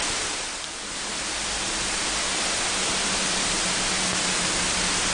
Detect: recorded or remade recorded